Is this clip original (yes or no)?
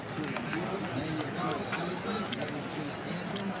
yes